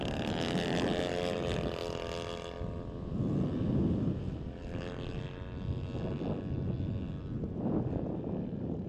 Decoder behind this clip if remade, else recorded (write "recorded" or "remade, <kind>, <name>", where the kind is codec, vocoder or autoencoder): recorded